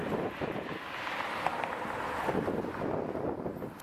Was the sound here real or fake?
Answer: real